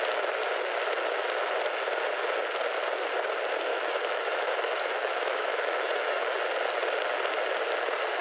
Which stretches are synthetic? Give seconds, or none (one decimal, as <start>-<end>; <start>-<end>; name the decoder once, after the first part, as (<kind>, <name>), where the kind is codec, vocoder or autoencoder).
3.7-6.3 (autoencoder, DAC-VAE)